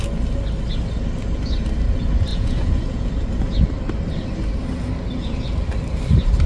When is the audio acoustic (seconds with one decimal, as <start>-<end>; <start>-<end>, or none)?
0.0-2.3; 3.1-6.5